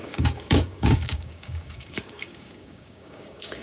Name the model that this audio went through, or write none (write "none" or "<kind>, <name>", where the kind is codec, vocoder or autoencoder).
codec, DAC